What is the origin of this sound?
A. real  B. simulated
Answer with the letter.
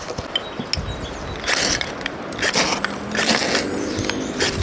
A